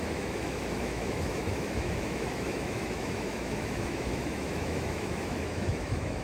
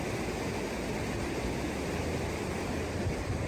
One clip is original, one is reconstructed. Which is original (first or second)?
second